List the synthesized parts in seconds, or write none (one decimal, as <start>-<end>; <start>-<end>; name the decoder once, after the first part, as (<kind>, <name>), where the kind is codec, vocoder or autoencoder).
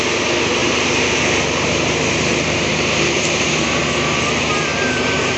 0.6-3.8 (vocoder, BigVGAN v2); 4.7-5.4